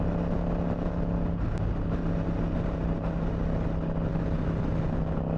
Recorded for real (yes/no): yes